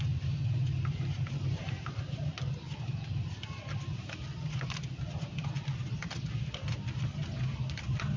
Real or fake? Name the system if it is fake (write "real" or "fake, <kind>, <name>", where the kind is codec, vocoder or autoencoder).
real